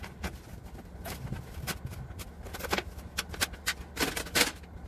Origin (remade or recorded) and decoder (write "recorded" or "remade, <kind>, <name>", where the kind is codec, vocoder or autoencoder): recorded